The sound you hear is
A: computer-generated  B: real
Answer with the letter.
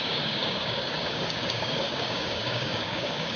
A